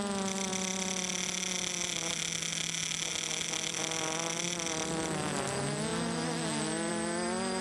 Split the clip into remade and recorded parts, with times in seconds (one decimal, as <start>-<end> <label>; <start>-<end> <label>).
0.0-7.6 recorded